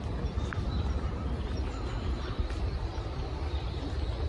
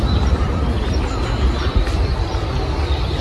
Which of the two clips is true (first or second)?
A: second